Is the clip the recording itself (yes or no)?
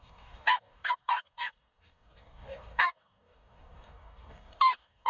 no